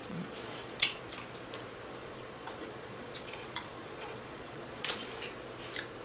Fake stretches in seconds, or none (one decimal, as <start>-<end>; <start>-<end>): 0.0-1.0; 2.0-5.1